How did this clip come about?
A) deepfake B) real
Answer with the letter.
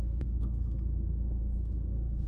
A